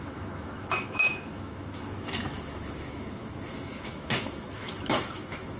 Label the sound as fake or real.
fake